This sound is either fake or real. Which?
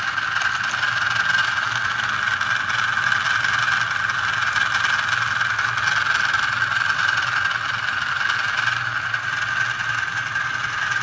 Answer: real